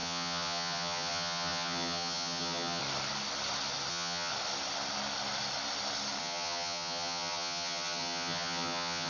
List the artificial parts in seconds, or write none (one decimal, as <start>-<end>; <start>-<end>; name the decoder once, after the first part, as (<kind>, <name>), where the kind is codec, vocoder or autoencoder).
0.0-2.8 (vocoder, HiFi-GAN); 3.9-4.3; 6.2-9.1